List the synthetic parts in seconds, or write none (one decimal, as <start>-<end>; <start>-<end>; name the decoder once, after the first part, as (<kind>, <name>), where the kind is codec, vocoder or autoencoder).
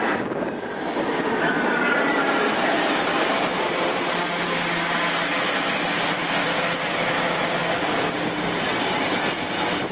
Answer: 3.5-4.1 (vocoder, BigVGAN v2)